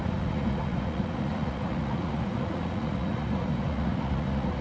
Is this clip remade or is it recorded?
remade